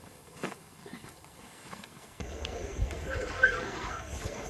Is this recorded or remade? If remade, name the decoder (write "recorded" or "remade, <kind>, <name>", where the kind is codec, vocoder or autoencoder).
remade, codec, SNAC